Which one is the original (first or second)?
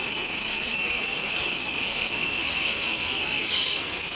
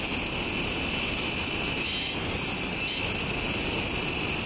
second